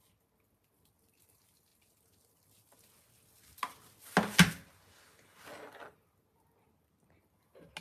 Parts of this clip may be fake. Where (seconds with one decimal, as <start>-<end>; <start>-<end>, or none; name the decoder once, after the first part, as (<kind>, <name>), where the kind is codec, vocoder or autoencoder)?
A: none